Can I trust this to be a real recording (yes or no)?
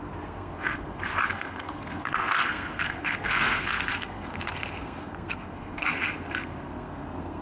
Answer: no